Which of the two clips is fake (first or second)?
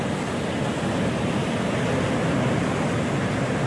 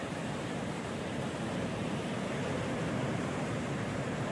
second